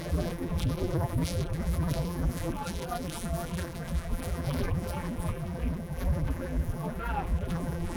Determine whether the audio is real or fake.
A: fake